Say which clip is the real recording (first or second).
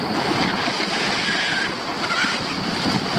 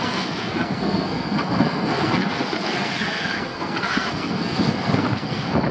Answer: first